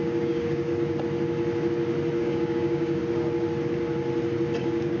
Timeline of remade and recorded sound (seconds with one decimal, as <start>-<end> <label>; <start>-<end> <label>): 0.0-0.7 remade; 0.7-2.2 recorded; 2.2-3.0 remade; 3.0-4.6 recorded; 4.6-5.0 remade